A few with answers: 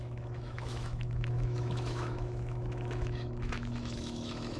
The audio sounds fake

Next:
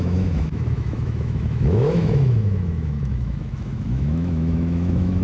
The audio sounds fake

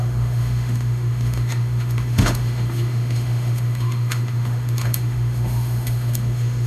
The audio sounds fake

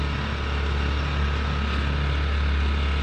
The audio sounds real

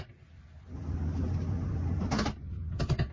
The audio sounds real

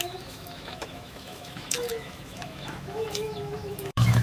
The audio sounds fake